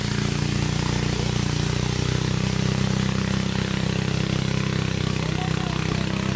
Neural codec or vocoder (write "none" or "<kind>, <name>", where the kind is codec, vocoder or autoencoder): none